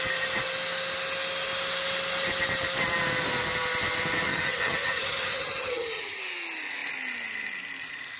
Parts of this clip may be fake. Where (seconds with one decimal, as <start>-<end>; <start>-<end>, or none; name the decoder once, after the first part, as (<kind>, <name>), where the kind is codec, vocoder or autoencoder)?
4.3-6.2 (vocoder, HiFi-GAN)

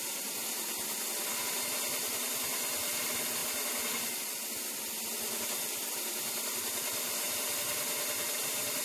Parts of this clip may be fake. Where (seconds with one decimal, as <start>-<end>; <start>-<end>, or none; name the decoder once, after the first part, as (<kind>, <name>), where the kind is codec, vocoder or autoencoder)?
none